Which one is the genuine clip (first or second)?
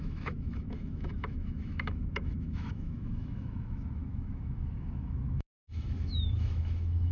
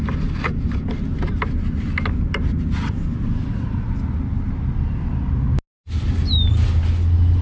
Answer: second